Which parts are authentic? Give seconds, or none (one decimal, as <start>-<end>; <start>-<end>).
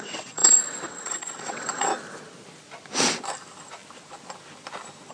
1.9-5.1